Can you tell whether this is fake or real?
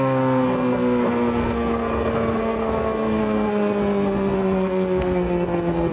fake